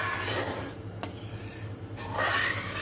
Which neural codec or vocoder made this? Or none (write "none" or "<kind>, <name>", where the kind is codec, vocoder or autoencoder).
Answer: vocoder, BigVGAN v2